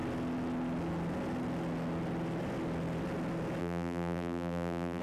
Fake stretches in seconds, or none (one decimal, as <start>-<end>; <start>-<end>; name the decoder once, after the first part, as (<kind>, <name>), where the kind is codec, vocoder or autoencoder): 3.6-5.0 (vocoder, BigVGAN v2)